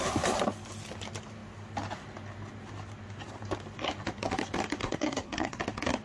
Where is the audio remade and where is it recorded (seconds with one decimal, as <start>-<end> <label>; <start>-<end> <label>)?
0.0-4.8 recorded; 4.8-5.6 remade; 5.6-6.0 recorded